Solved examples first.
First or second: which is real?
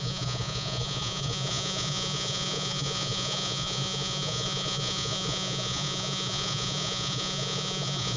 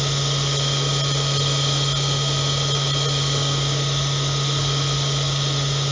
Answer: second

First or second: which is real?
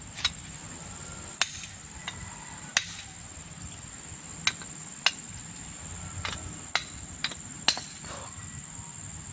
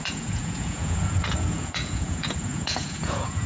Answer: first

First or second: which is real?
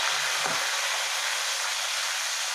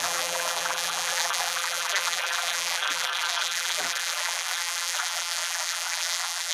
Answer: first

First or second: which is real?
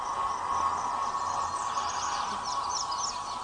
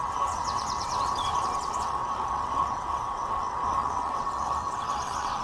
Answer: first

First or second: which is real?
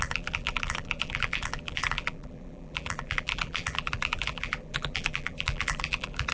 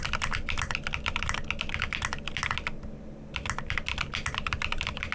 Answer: second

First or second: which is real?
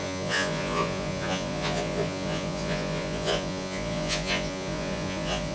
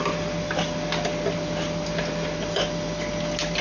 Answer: second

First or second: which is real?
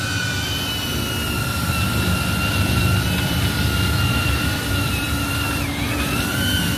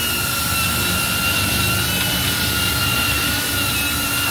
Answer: second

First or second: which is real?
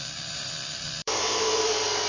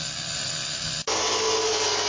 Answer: second